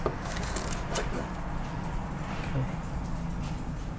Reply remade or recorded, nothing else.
recorded